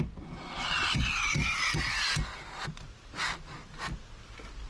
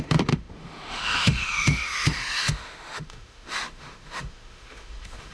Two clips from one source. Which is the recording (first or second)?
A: first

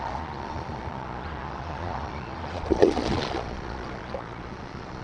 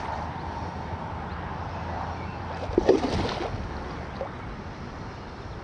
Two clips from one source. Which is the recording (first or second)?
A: second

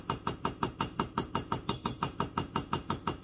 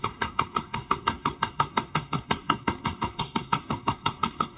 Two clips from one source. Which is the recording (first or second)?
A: first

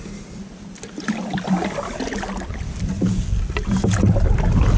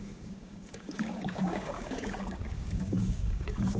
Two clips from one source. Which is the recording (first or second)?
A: first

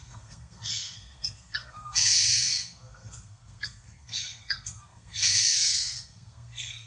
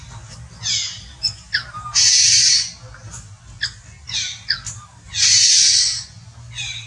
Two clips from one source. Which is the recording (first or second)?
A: second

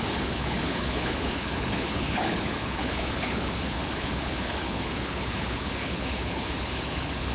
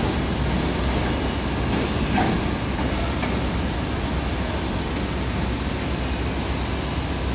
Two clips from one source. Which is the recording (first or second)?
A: second